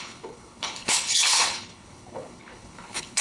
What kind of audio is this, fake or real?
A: fake